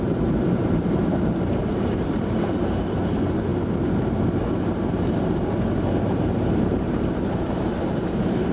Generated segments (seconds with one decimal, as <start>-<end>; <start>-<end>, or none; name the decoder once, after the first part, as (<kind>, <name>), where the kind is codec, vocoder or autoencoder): 0.0-3.5 (vocoder, BigVGAN v2); 4.6-8.5